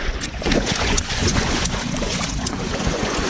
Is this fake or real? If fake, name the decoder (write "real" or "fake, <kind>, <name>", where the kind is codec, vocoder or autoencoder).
fake, vocoder, Vocos